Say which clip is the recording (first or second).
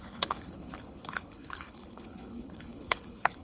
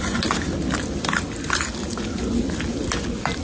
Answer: second